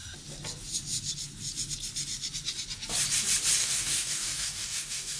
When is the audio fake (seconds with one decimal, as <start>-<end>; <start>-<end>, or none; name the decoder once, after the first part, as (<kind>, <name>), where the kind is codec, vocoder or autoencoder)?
3.6-5.2 (codec, DAC)